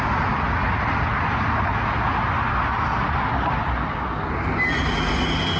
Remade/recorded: recorded